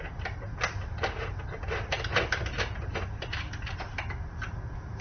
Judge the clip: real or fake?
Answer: real